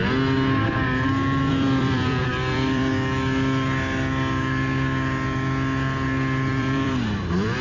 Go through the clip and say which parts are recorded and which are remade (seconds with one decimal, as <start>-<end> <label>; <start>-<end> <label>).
0.0-1.5 recorded; 1.5-2.9 remade; 2.9-6.6 recorded; 6.6-7.6 remade